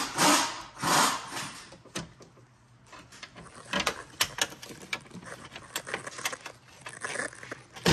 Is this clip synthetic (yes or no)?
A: no